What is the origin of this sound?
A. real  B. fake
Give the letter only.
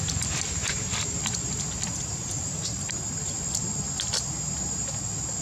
A